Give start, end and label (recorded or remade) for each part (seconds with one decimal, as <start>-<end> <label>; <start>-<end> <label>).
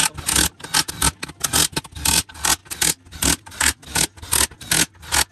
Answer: 0.0-5.3 recorded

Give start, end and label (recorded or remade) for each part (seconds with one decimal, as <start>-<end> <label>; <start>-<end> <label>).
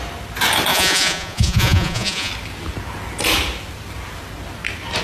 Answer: 0.0-0.7 recorded; 0.7-2.3 remade; 2.3-5.0 recorded